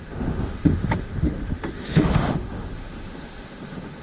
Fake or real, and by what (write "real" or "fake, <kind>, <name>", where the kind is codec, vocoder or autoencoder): fake, autoencoder, DAC-VAE